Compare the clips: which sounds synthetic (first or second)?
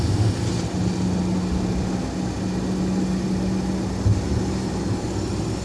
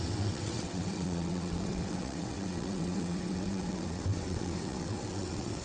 second